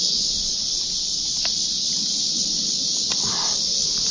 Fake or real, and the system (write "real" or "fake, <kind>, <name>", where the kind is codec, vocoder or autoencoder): fake, vocoder, BigVGAN v2